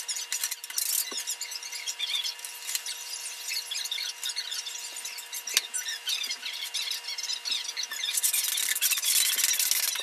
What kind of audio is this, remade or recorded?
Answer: recorded